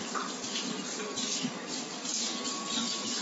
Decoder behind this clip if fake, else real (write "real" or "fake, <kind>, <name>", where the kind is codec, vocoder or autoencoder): real